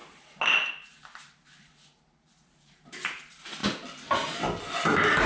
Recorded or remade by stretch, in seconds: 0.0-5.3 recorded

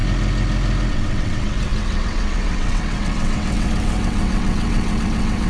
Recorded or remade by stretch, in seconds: 0.0-0.9 recorded; 0.9-5.5 remade

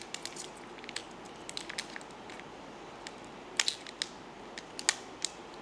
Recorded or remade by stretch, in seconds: 0.0-5.6 recorded